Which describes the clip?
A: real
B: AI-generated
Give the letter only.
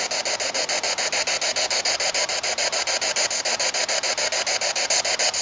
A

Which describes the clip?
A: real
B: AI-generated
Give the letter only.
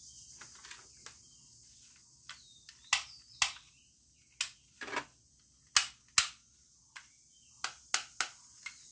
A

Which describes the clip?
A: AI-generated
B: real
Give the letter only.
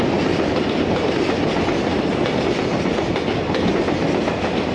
B